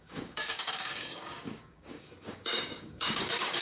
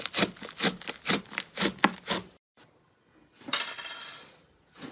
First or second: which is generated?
first